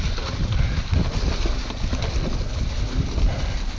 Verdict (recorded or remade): recorded